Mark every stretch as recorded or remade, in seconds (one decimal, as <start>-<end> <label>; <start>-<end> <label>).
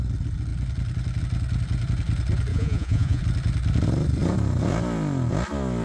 0.0-2.5 recorded; 2.5-3.2 remade; 3.2-5.8 recorded